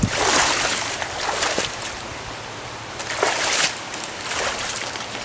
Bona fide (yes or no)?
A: no